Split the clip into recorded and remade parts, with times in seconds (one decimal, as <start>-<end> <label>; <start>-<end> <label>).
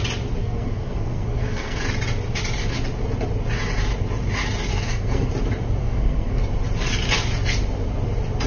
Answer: 0.0-0.4 recorded; 0.4-1.8 remade; 1.8-4.7 recorded; 4.7-5.3 remade; 5.3-5.8 recorded; 5.8-6.4 remade; 6.4-8.5 recorded